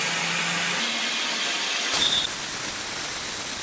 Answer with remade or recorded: recorded